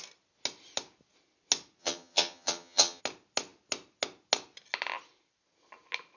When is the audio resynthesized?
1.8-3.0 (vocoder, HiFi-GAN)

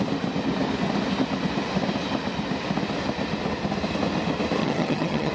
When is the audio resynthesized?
4.6-5.3 (vocoder, HiFi-GAN)

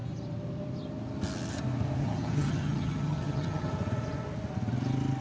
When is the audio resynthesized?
2.0-3.7 (vocoder, HiFi-GAN)

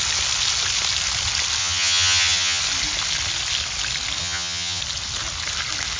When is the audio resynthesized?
1.6-2.6 (vocoder, HiFi-GAN); 4.2-4.8

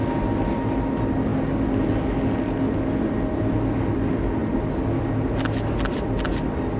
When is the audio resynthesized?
none

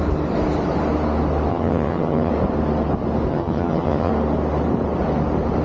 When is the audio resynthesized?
1.5-2.3 (vocoder, HiFi-GAN); 3.3-4.1

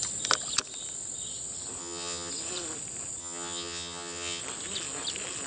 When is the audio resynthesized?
1.8-2.3 (vocoder, HiFi-GAN); 3.2-4.4